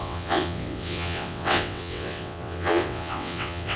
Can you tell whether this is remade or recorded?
remade